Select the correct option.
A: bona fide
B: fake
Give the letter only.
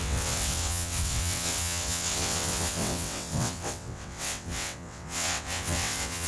B